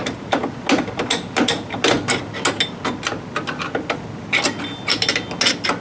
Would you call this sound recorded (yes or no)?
yes